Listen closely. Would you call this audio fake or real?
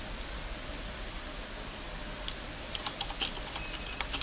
real